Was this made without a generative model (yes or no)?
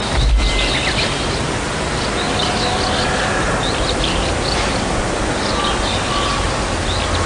yes